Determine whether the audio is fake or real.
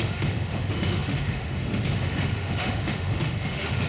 fake